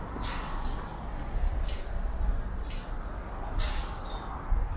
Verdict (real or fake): real